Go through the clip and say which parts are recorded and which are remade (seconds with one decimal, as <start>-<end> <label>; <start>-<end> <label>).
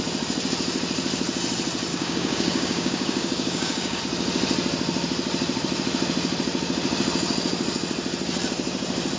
0.0-1.9 recorded; 1.9-4.0 remade; 4.0-9.2 recorded